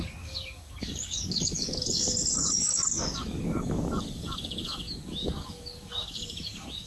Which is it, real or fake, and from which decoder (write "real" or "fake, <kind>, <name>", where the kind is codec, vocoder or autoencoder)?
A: fake, codec, DAC